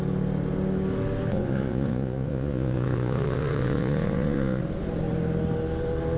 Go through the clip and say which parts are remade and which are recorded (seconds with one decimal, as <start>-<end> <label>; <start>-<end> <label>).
0.0-1.3 recorded; 1.3-4.6 remade; 4.6-6.2 recorded